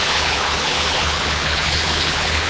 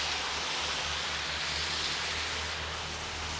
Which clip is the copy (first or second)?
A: first